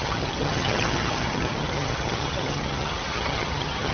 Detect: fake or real fake